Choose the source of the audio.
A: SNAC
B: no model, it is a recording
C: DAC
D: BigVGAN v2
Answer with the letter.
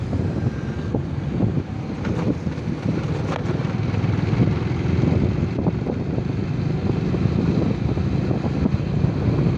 B